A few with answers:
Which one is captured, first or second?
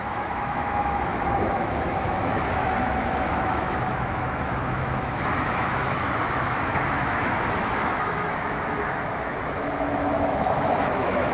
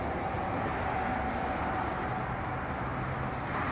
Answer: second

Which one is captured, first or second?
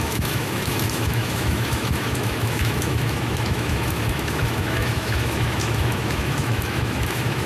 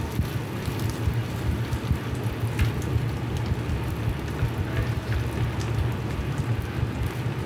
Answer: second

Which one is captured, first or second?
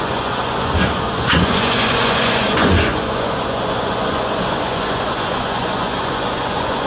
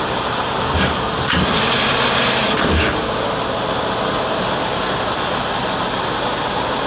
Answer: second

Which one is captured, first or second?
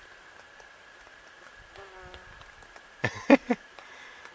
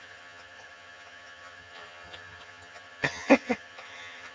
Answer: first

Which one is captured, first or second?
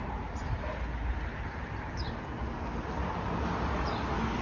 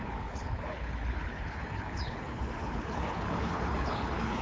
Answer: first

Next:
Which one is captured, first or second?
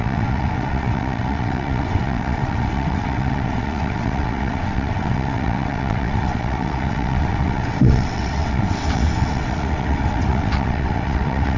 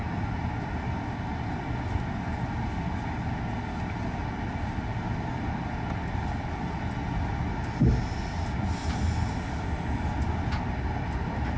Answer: second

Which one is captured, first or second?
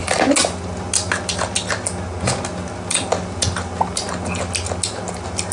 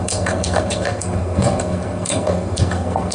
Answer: first